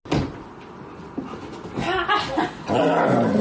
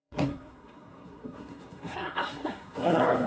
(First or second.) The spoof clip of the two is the second